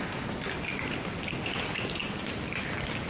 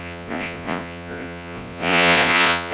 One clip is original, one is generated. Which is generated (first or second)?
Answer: second